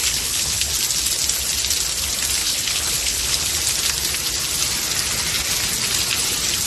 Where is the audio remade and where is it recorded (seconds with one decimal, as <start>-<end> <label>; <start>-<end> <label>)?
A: 0.0-0.7 remade; 0.7-2.4 recorded; 2.4-3.5 remade; 3.5-6.7 recorded